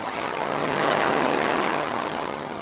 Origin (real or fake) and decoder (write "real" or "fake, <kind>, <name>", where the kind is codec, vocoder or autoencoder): fake, vocoder, HiFi-GAN